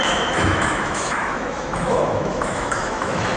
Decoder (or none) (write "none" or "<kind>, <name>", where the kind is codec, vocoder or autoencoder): autoencoder, DAC-VAE